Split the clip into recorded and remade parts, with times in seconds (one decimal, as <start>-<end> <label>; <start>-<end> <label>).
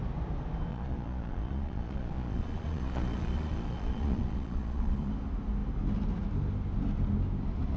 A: 0.0-0.7 recorded; 0.7-5.1 remade; 5.1-7.8 recorded